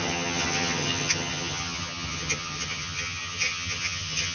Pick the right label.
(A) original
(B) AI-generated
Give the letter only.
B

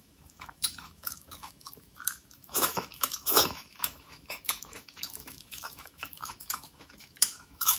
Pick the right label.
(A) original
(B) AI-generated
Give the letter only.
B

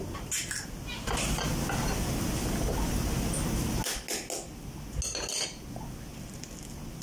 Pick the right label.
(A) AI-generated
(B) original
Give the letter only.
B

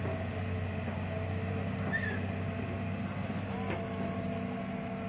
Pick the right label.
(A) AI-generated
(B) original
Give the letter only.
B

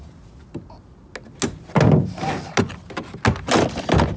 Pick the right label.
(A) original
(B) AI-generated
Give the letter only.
A